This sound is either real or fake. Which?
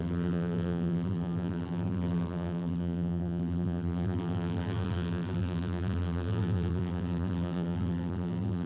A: fake